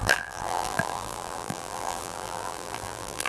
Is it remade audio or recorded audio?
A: remade